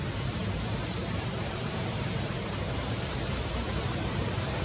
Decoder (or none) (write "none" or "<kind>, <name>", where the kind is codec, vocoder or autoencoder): vocoder, BigVGAN v2